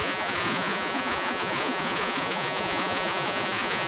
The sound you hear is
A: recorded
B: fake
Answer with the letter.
B